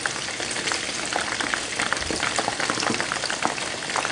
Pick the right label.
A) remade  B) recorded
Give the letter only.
B